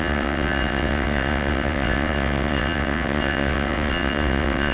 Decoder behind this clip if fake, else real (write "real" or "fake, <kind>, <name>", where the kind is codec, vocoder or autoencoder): fake, vocoder, WaveNeXt